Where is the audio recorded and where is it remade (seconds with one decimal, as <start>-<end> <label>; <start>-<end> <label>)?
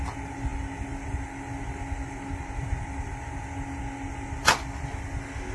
0.0-5.5 recorded